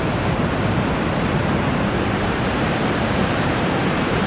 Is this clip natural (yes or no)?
no